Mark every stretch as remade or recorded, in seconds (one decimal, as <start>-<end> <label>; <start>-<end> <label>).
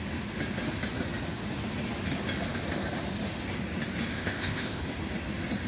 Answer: 0.0-4.1 recorded; 4.1-4.8 remade; 4.8-5.7 recorded